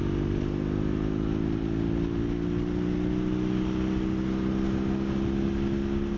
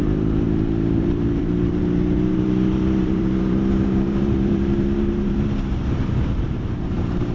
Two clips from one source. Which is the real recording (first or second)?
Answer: first